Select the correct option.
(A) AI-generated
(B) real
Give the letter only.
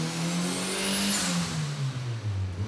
B